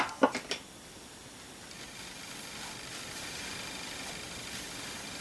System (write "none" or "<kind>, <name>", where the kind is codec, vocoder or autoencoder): none